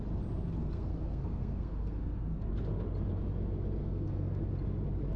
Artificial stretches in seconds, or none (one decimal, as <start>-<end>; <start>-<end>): 0.6-2.5; 3.8-4.4